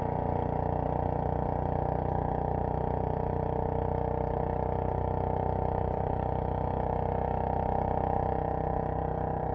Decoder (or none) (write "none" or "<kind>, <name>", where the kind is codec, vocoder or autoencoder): vocoder, BigVGAN v2